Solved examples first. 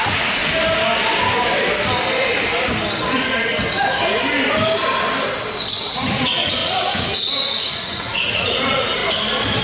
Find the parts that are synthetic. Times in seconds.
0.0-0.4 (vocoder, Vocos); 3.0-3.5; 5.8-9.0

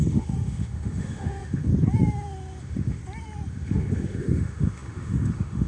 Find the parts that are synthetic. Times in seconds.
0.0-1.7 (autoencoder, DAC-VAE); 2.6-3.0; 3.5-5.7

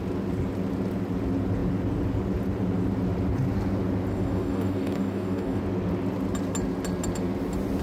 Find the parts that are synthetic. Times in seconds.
4.1-5.6 (codec, DAC)

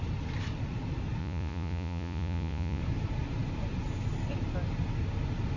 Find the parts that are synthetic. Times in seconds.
1.2-2.8 (vocoder, Vocos)